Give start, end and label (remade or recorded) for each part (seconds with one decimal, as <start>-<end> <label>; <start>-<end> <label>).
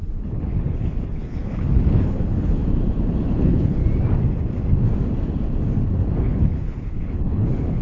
0.0-2.6 remade; 2.6-3.2 recorded; 3.2-3.8 remade; 3.8-6.2 recorded; 6.2-7.8 remade